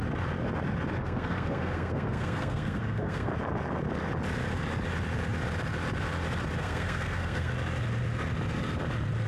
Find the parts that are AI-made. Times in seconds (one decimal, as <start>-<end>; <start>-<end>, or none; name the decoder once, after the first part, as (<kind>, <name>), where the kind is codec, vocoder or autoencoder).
1.0-3.3 (codec, SNAC); 6.6-7.5